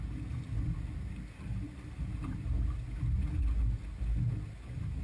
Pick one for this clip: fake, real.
real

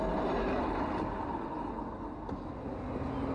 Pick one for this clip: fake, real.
real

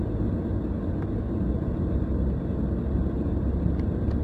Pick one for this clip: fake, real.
real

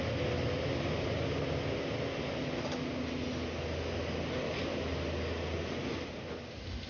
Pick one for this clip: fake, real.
real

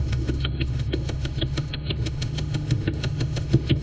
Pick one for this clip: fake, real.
fake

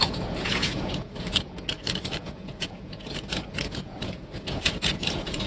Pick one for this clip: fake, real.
fake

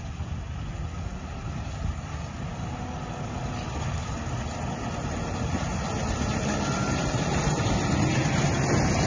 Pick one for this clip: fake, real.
real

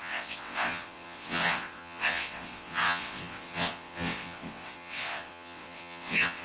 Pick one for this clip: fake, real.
fake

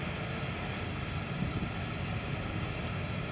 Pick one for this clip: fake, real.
real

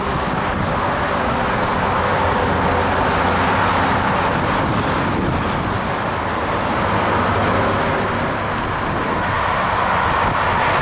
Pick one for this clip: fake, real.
real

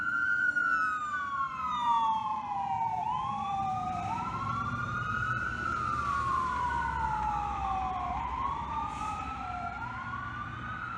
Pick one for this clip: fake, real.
fake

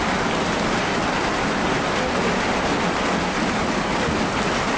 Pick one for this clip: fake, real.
real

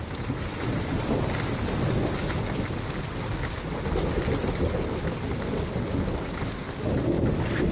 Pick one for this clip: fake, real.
real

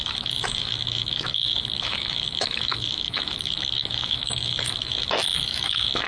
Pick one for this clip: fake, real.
fake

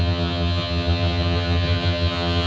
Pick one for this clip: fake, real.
fake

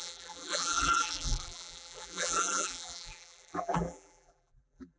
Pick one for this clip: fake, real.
fake